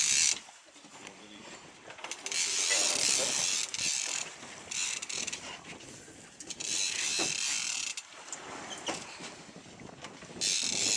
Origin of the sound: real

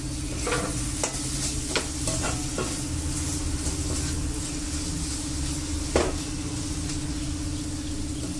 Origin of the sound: real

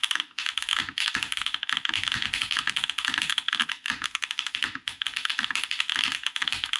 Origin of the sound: fake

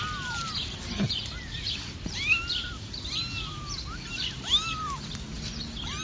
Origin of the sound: real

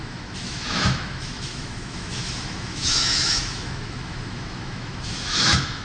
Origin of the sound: fake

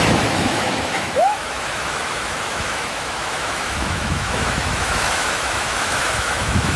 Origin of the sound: fake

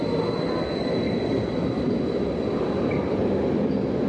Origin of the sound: real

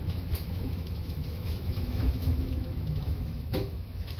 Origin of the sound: fake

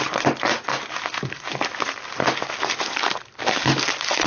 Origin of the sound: real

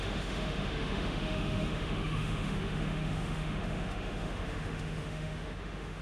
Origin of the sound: fake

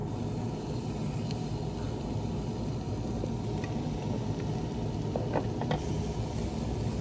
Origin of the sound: real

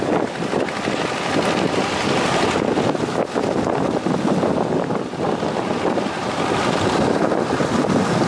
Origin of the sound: real